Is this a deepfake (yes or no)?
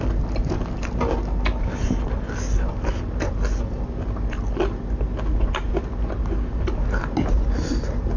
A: no